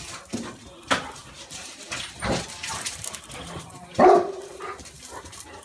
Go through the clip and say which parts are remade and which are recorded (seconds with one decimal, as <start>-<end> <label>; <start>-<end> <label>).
0.0-1.2 recorded; 1.2-4.6 remade; 4.6-5.6 recorded